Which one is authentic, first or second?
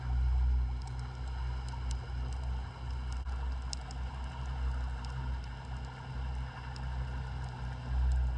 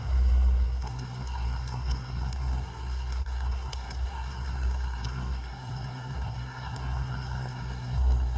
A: first